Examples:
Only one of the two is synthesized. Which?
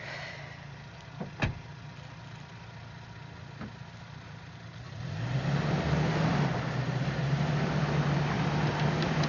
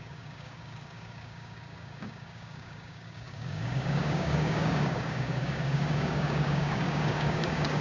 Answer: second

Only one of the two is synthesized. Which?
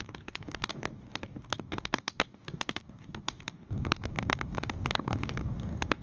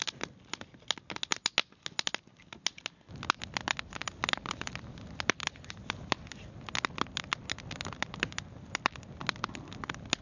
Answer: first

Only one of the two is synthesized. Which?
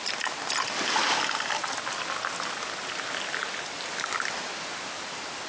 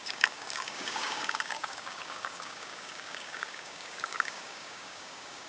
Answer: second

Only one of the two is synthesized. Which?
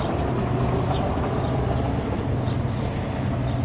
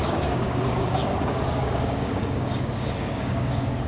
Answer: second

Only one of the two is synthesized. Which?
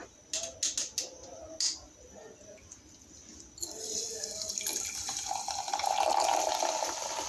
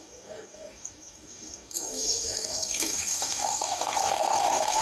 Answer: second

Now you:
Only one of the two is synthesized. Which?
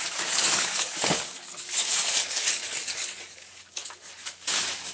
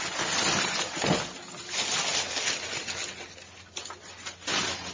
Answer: first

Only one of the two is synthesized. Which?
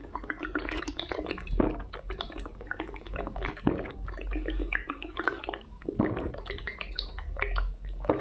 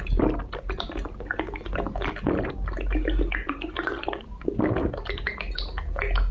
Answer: first